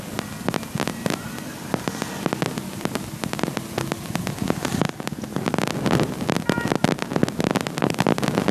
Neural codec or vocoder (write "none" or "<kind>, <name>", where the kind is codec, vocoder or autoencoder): none